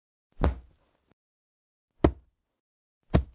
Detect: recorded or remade recorded